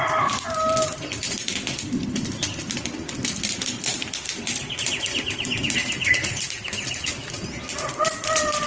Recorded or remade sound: recorded